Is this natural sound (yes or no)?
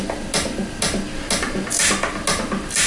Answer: yes